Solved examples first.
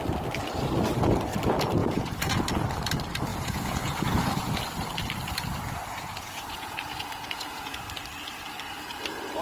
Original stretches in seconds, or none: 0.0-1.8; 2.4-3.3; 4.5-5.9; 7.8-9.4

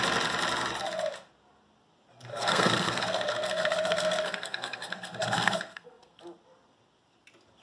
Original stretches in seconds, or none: 0.0-2.3; 6.2-7.6

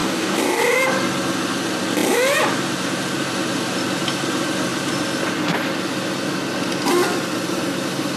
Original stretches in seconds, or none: 0.6-8.2

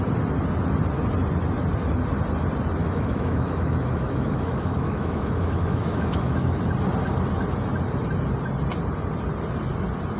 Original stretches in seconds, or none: 0.0-2.8; 6.6-10.2

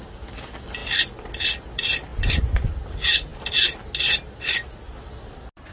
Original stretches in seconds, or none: 0.0-2.1; 2.7-5.7